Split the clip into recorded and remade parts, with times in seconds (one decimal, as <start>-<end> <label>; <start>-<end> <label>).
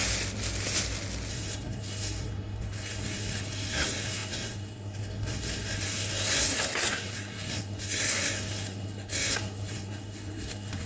0.0-1.3 recorded; 1.3-10.9 remade